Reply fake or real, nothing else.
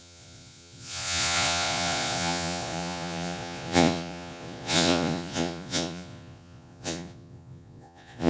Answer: fake